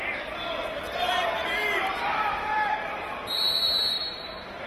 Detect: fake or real real